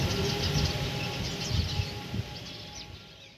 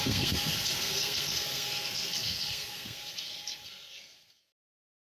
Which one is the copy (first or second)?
second